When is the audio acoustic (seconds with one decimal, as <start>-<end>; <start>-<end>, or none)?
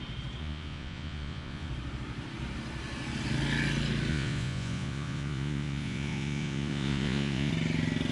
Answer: 0.0-0.4; 1.7-4.1; 7.5-8.1